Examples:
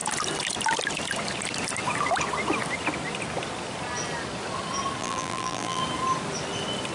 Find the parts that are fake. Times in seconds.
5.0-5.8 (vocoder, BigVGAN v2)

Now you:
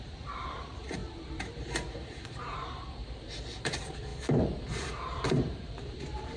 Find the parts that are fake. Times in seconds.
0.0-6.4 (vocoder, BigVGAN v2)

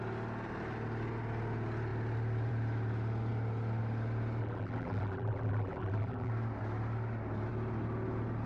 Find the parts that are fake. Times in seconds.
4.4-6.3 (vocoder, BigVGAN v2)

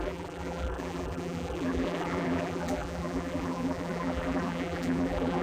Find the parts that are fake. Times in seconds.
0.0-5.4 (vocoder, BigVGAN v2)